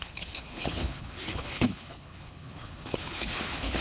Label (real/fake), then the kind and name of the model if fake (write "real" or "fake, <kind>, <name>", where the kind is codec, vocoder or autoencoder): fake, codec, HILCodec